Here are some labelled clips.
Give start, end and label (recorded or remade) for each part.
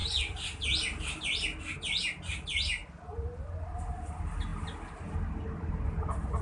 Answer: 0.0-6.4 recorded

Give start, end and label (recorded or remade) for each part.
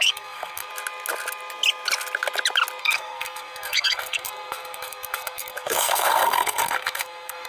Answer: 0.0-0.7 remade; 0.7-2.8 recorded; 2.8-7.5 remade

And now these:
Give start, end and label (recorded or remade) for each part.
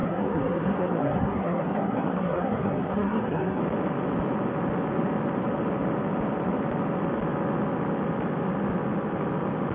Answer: 0.0-3.6 remade; 3.6-9.7 recorded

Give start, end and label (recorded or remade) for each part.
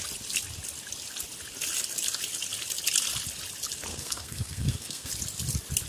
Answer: 0.0-3.9 recorded; 3.9-5.1 remade; 5.1-5.9 recorded